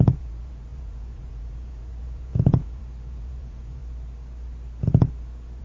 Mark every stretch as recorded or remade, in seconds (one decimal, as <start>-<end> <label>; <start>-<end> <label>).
0.0-3.8 remade; 3.8-5.6 recorded